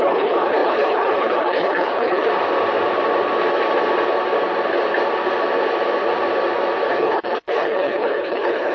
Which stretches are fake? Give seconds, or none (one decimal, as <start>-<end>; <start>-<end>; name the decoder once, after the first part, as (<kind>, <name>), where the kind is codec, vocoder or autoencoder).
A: 0.0-2.3 (codec, HILCodec); 6.9-8.7